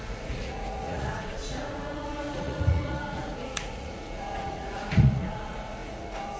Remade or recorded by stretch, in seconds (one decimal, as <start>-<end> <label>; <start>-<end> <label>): 0.0-6.4 remade